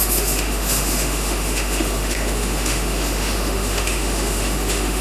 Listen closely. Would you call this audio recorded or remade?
remade